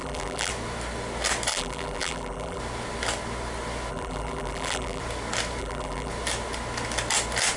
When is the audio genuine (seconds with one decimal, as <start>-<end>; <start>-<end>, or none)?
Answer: 0.5-1.5; 2.6-3.9; 5.0-5.6; 6.1-7.6